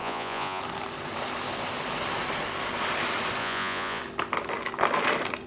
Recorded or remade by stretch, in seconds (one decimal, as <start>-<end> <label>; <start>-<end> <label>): 0.0-0.6 remade; 0.6-3.4 recorded; 3.4-4.0 remade; 4.0-5.5 recorded